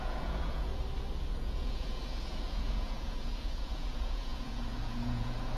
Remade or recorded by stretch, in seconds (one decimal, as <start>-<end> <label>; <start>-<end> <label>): 0.0-0.7 remade; 0.7-1.3 recorded; 1.3-5.6 remade